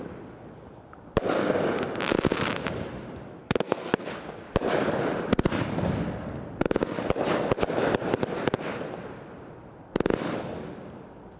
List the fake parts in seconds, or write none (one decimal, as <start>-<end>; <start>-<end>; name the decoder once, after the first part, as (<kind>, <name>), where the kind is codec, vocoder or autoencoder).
3.4-4.1 (codec, SNAC)